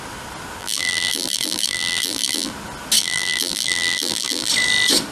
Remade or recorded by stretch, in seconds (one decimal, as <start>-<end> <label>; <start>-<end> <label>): 0.0-0.6 recorded; 0.6-2.5 remade; 2.5-3.0 recorded; 3.0-4.5 remade; 4.5-5.1 recorded

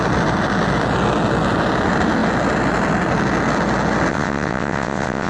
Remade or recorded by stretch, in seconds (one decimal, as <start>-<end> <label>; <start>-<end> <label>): 0.0-4.1 recorded; 4.1-5.3 remade